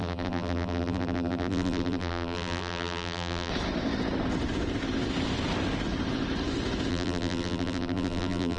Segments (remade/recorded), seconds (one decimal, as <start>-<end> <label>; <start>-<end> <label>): 0.0-3.5 remade; 3.5-6.9 recorded; 6.9-8.6 remade